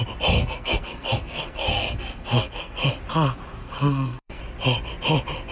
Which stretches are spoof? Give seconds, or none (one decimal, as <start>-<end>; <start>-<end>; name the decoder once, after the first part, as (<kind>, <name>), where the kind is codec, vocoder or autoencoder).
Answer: 0.4-2.9 (codec, SNAC); 3.6-4.4